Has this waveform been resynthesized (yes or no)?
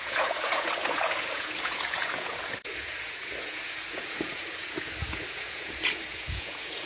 yes